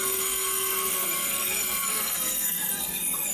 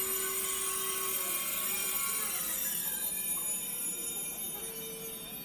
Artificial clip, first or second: first